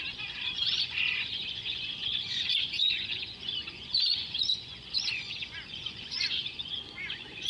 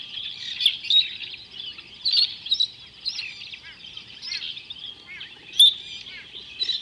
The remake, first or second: first